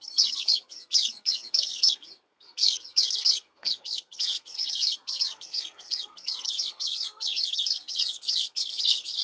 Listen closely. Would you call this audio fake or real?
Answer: fake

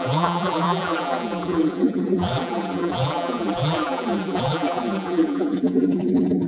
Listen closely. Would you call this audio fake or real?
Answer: fake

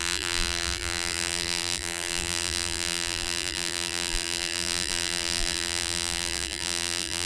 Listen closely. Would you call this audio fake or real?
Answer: fake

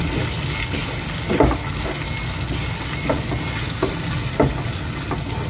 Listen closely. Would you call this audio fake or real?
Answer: real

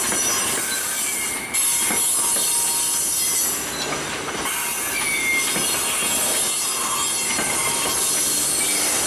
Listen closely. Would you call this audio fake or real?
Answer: real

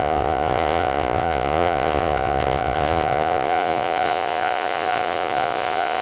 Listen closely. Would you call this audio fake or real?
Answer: fake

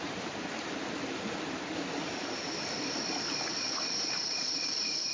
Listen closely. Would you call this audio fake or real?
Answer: real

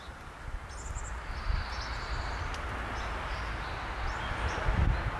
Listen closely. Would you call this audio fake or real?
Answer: real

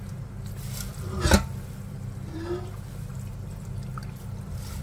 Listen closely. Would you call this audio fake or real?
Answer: real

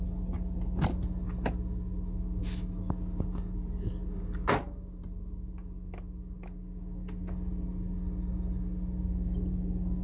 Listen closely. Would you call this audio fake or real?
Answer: real